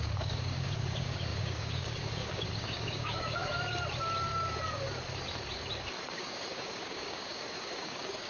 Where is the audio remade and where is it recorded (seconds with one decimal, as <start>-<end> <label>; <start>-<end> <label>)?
0.0-3.4 remade; 3.4-6.1 recorded; 6.1-8.3 remade

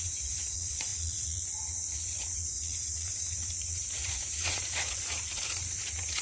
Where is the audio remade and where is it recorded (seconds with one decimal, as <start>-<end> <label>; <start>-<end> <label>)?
0.0-6.2 remade

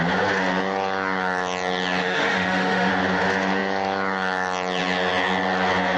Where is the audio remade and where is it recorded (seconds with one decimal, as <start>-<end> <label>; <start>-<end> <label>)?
0.0-2.0 recorded; 2.0-2.9 remade; 2.9-6.0 recorded